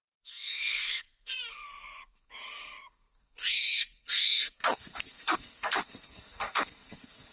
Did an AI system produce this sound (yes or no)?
yes